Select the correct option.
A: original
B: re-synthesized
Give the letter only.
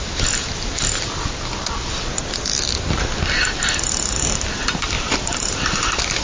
A